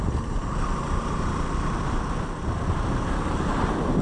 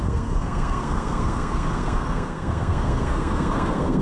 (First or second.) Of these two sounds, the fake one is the second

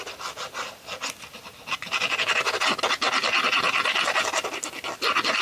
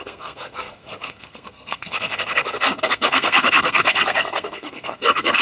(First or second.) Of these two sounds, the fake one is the second